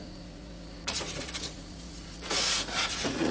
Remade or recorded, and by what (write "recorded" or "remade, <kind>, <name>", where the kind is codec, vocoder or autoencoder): remade, vocoder, Vocos